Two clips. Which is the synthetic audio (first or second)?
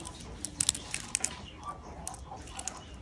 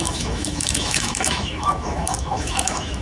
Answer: second